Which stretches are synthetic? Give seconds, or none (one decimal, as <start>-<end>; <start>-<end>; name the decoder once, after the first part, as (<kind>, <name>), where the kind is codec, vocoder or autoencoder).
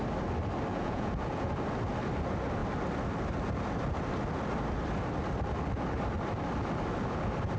0.7-1.5 (vocoder, Vocos)